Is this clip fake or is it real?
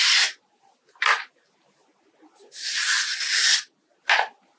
real